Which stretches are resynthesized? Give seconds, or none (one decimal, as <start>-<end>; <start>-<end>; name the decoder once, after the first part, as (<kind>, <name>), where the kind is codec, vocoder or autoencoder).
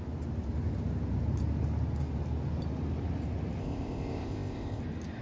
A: 3.6-4.8 (codec, ZipCodec)